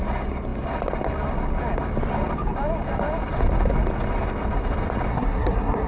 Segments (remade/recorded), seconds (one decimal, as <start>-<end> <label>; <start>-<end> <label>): 0.0-5.1 recorded; 5.1-5.9 remade